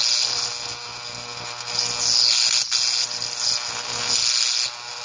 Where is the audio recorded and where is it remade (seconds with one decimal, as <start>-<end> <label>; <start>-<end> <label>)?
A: 0.0-5.0 recorded